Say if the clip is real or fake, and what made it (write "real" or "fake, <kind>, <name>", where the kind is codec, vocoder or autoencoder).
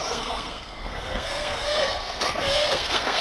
fake, codec, SNAC